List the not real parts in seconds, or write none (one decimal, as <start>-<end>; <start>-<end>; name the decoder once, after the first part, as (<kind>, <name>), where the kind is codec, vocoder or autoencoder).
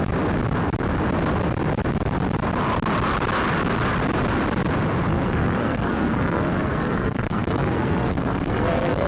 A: 5.1-9.1 (codec, SNAC)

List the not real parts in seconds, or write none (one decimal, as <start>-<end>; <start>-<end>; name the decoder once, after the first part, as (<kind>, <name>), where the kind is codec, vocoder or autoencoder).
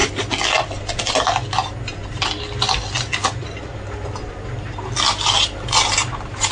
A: none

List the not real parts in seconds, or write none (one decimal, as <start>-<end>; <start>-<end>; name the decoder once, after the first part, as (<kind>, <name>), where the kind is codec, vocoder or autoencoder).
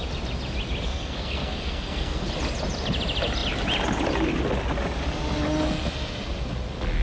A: 0.9-2.3 (codec, SNAC)